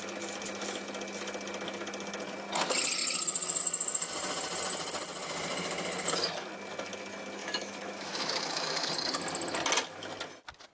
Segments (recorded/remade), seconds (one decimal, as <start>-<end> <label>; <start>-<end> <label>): 0.0-7.4 recorded; 7.4-8.9 remade; 8.9-10.7 recorded